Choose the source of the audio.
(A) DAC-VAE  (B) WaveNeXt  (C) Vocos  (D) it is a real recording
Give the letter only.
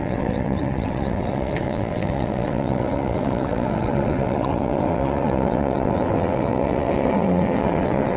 B